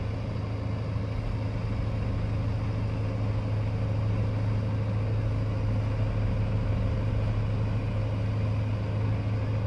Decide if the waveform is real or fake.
real